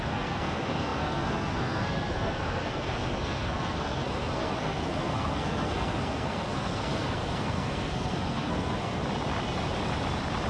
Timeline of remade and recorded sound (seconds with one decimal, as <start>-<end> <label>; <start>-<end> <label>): 0.0-9.0 remade; 9.0-10.5 recorded